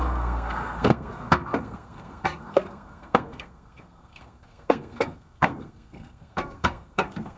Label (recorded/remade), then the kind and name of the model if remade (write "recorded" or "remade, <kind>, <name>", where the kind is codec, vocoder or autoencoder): remade, codec, SNAC